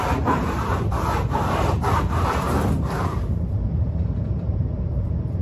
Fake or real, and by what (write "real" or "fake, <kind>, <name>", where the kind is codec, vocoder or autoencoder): fake, vocoder, BigVGAN v2